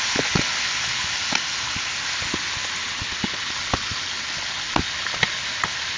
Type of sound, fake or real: real